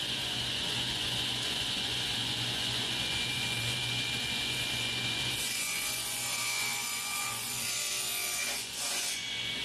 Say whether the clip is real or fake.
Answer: fake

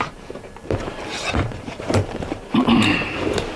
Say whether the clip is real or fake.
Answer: fake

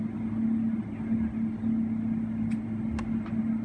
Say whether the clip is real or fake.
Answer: real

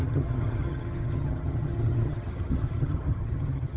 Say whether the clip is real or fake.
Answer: fake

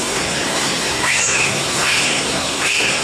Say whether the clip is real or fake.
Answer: fake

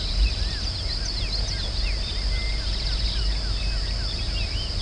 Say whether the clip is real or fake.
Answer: real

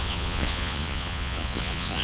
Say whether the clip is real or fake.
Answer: fake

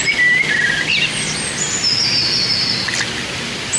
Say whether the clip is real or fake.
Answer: real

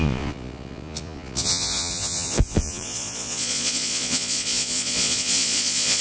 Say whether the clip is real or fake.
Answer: fake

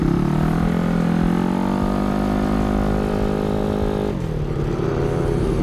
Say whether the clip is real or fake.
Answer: real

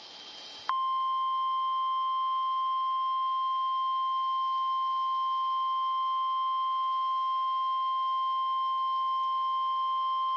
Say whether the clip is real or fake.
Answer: real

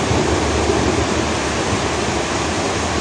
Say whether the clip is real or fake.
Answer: real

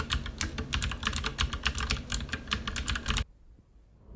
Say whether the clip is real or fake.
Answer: real